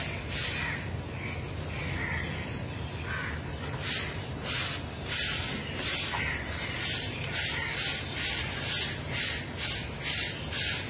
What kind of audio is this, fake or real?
real